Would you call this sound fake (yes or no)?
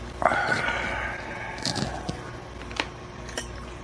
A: no